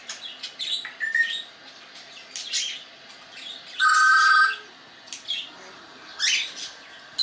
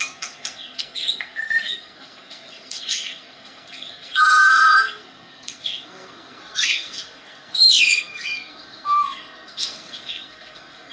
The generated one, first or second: second